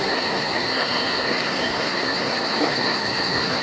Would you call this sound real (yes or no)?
no